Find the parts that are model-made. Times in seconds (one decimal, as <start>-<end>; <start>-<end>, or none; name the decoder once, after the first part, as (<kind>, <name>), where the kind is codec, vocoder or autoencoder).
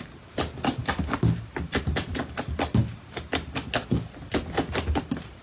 none